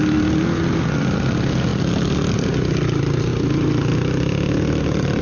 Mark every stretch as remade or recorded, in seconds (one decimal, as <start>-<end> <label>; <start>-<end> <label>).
0.0-5.2 recorded